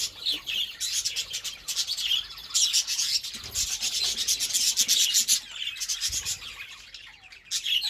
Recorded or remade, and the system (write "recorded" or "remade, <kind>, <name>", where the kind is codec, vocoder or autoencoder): recorded